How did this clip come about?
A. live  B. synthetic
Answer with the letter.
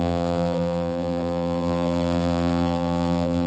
B